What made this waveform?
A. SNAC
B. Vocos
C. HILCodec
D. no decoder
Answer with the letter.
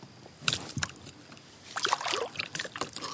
D